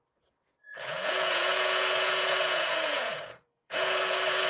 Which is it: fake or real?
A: fake